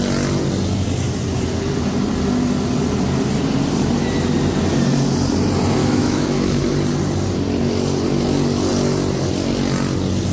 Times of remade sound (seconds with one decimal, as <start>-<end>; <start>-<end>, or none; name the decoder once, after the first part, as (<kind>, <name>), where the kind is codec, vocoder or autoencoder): 5.8-6.6 (autoencoder, DAC-VAE)